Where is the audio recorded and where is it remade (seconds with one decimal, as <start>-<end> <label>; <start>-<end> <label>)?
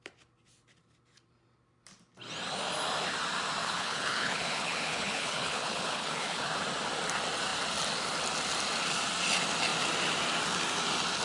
0.0-3.6 recorded; 3.6-6.5 remade; 6.5-11.2 recorded